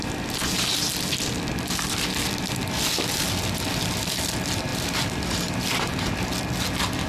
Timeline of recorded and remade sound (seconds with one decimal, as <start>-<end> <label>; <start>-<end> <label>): 0.0-4.7 recorded; 4.7-6.3 remade; 6.3-7.1 recorded